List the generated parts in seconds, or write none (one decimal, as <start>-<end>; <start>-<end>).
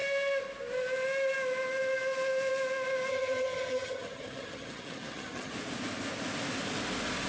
3.1-5.5